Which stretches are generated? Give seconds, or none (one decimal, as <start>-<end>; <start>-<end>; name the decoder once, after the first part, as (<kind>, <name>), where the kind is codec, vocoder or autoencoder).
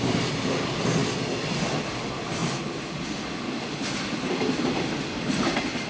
none